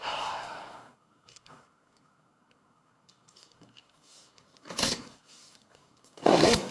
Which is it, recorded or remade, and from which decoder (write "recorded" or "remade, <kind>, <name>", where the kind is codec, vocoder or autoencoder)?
remade, codec, SNAC